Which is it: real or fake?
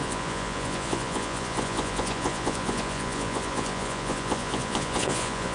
fake